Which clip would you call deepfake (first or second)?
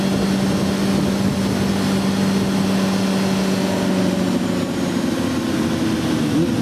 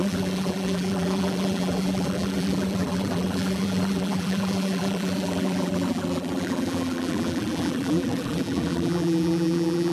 second